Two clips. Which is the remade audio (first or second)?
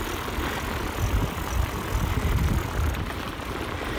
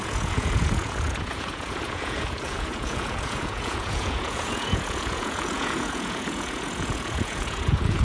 second